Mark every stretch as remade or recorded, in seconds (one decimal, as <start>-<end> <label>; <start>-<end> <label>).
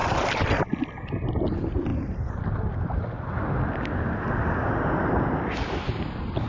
0.0-6.5 recorded